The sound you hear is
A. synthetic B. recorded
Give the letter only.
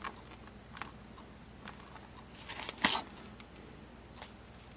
B